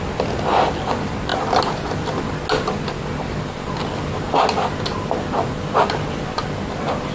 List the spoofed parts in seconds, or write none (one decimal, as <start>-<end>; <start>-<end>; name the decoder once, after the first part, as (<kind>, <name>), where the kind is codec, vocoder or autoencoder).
none